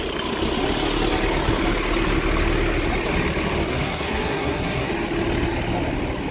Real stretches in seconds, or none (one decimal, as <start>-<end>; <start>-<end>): 0.0-3.7; 4.9-6.3